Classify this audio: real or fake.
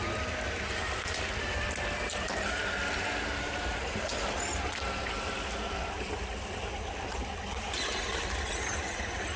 real